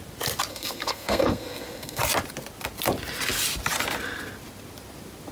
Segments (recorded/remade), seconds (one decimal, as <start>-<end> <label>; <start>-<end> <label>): 0.0-0.5 recorded; 0.5-2.0 remade; 2.0-5.3 recorded